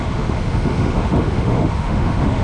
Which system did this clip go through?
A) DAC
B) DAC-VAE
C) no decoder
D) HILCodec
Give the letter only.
B